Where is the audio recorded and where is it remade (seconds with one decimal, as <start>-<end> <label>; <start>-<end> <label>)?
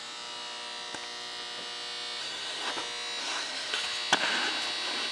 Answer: 0.0-2.2 recorded; 2.2-2.7 remade; 2.7-3.2 recorded; 3.2-3.7 remade; 3.7-5.1 recorded